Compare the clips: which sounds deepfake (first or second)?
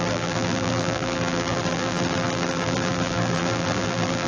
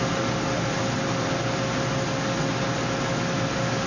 first